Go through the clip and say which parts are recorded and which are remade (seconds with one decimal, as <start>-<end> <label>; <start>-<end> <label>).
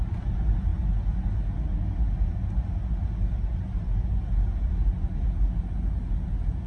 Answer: 0.0-6.7 recorded